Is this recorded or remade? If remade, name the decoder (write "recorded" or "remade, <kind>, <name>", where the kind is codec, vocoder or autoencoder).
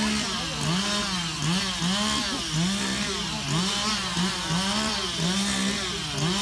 recorded